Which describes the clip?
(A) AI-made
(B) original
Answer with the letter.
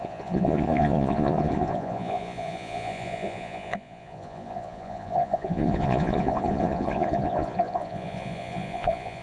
A